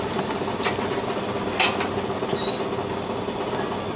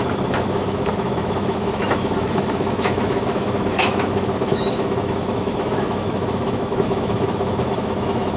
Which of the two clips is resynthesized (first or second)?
second